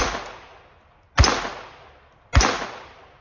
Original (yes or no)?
yes